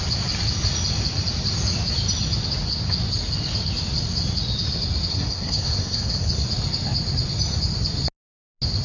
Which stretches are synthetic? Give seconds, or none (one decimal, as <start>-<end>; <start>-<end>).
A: 5.1-6.1